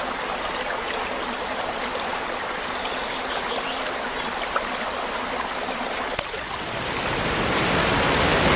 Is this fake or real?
real